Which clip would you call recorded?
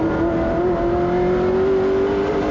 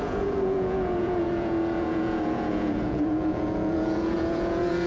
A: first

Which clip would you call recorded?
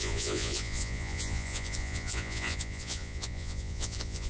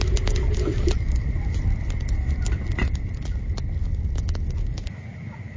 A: second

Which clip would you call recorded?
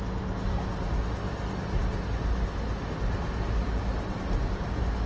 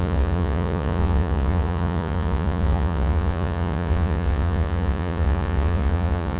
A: first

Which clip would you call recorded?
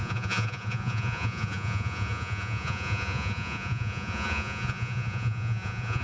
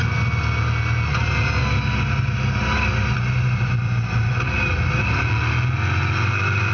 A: second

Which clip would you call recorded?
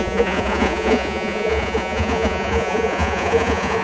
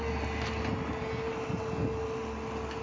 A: second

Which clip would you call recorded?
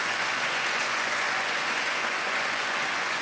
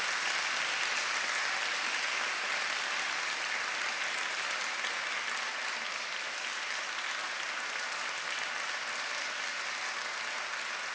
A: second